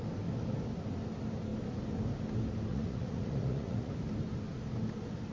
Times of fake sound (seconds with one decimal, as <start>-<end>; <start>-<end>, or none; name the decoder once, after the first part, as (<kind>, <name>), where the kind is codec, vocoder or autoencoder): 2.7-3.9 (vocoder, Vocos)